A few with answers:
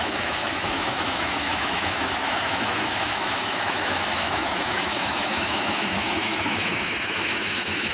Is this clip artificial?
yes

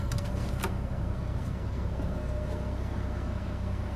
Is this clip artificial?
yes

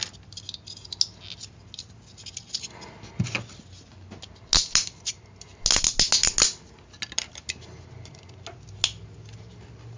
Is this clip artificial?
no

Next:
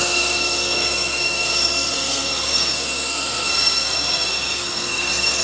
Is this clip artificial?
yes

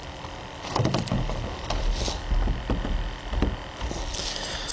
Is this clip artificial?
no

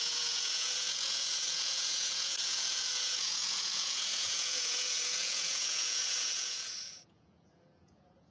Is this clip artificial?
yes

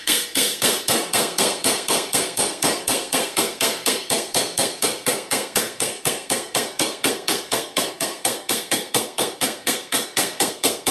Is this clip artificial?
yes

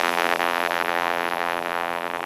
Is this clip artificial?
yes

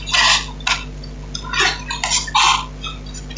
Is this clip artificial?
no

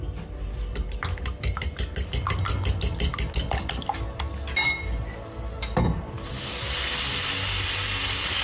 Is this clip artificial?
no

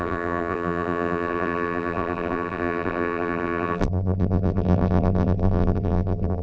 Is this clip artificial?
yes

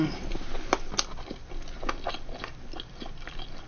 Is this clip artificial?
no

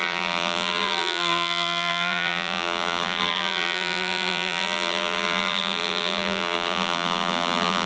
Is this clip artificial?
yes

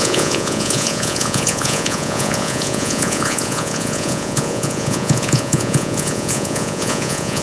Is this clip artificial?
yes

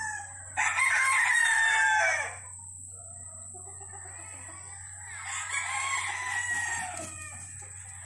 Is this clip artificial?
no